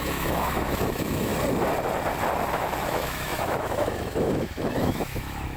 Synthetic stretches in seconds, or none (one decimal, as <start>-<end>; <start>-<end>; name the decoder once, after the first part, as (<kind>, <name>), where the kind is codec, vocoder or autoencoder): 0.0-1.3 (autoencoder, DAC-VAE); 2.5-5.6